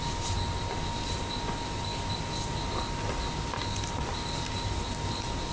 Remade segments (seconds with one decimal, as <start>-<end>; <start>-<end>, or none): none